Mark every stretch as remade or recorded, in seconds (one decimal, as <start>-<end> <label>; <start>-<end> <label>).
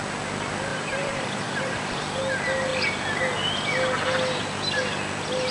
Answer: 0.0-0.7 recorded; 0.7-2.0 remade; 2.0-5.5 recorded